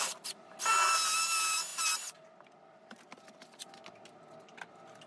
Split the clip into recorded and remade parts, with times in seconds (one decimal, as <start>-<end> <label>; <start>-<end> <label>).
0.0-5.1 recorded